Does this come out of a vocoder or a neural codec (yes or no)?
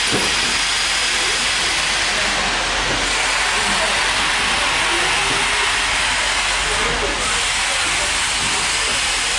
no